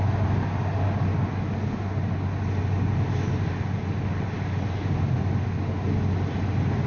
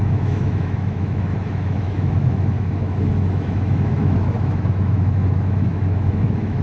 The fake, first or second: second